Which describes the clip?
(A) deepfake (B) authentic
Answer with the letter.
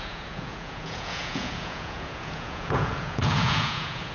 A